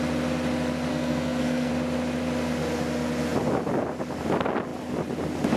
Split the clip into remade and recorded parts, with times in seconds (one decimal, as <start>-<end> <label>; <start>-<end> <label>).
0.0-0.9 recorded; 0.9-1.7 remade; 1.7-5.6 recorded